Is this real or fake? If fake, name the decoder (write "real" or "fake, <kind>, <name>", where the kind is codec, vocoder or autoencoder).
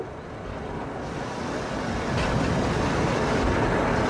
real